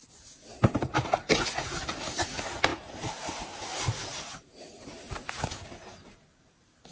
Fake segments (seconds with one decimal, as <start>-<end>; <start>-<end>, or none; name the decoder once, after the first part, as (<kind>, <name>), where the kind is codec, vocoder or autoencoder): 4.1-4.9 (vocoder, BigVGAN v2)